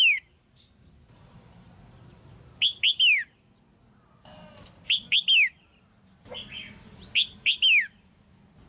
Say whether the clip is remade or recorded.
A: recorded